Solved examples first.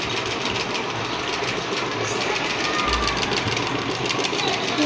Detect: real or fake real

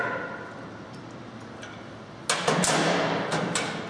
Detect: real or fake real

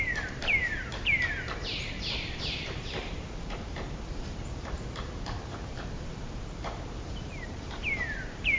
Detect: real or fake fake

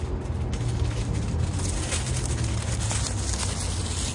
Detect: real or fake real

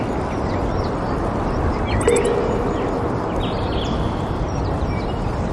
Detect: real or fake real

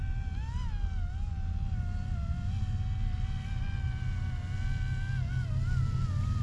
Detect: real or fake real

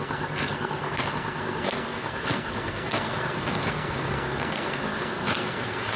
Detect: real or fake fake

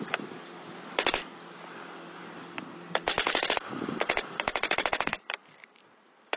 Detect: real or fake fake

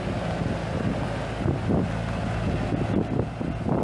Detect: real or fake real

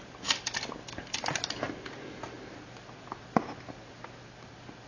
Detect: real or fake real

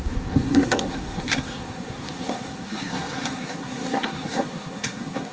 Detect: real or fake fake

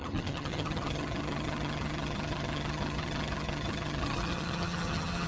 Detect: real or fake fake